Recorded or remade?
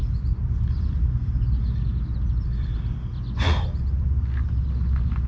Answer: recorded